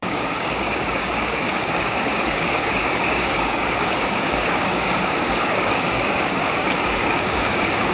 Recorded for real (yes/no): no